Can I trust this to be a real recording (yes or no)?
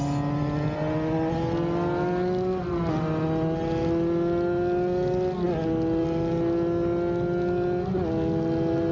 yes